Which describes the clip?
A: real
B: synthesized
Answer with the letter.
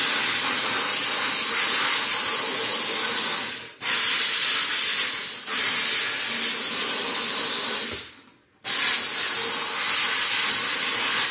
A